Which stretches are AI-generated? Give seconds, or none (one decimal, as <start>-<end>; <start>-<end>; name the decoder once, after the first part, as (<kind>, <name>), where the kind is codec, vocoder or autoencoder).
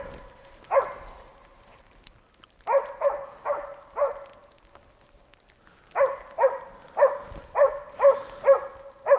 none